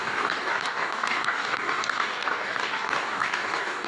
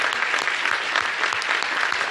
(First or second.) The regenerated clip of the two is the first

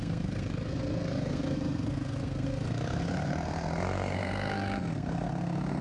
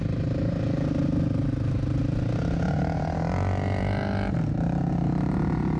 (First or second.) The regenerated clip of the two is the first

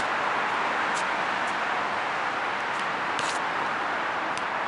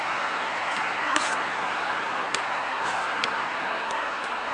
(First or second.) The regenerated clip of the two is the second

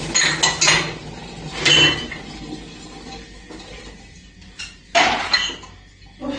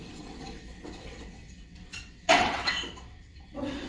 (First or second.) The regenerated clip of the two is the second